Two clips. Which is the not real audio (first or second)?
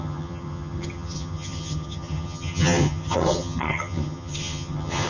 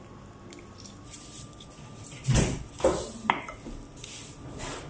first